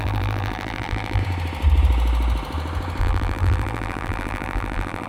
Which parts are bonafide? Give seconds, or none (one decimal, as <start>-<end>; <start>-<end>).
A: 1.2-3.0